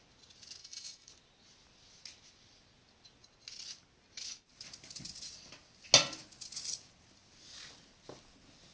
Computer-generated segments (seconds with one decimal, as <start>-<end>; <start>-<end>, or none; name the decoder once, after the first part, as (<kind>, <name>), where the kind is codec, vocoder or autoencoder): 0.6-1.1 (autoencoder, DAC-VAE)